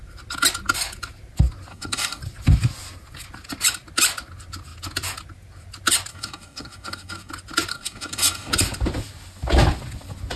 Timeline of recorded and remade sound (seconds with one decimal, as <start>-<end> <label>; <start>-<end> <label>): 0.0-1.7 recorded; 1.7-2.2 remade; 2.2-6.1 recorded; 6.1-7.3 remade; 7.3-7.7 recorded; 7.7-8.5 remade; 8.5-10.4 recorded